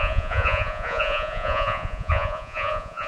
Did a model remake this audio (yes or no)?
yes